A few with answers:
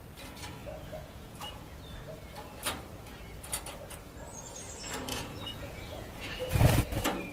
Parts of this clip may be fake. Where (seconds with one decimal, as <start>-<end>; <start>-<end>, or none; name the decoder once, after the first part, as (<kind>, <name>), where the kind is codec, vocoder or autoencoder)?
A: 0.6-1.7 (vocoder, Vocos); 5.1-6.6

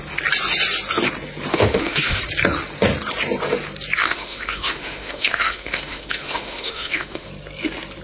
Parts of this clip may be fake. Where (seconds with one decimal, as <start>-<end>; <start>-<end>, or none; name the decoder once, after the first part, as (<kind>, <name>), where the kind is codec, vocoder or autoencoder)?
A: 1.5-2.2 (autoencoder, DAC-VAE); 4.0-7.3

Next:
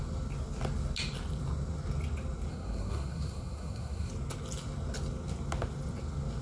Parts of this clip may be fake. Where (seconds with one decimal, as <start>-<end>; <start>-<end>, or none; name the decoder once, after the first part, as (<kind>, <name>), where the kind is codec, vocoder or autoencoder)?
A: 2.5-4.1 (codec, SNAC)

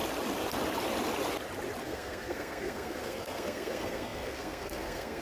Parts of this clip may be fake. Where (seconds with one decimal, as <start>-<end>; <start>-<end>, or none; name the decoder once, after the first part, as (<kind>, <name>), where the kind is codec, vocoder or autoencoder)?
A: 1.8-5.2 (codec, SNAC)